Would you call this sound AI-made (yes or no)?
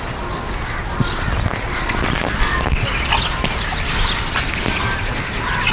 no